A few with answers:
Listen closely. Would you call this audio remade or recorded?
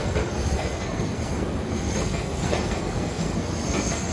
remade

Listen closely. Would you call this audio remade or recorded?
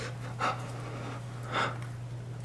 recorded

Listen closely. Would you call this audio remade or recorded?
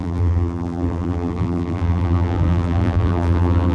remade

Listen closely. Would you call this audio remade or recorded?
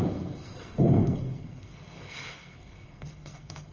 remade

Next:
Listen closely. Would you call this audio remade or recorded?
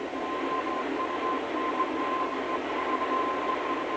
recorded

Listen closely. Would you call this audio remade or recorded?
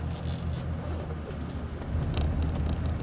recorded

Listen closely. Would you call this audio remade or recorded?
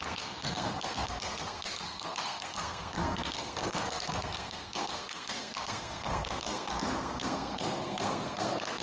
remade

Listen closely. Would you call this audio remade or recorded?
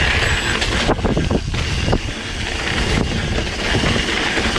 recorded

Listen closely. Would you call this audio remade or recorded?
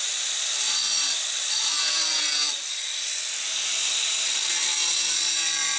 remade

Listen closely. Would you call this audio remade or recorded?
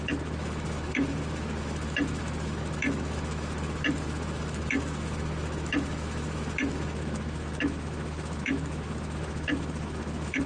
remade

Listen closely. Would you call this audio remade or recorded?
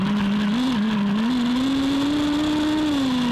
recorded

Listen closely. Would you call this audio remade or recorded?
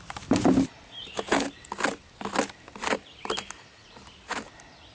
recorded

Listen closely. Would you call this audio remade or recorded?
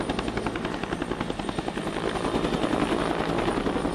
recorded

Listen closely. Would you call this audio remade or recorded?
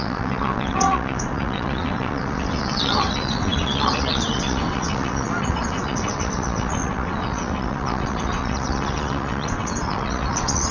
remade